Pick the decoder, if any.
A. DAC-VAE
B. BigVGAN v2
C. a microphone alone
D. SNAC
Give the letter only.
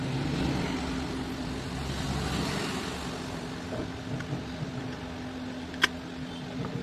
C